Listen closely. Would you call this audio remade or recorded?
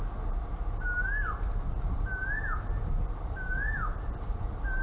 recorded